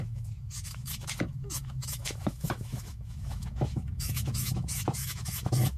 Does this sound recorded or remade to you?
remade